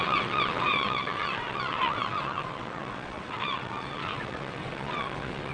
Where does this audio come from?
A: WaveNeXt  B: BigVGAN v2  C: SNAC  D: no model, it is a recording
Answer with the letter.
A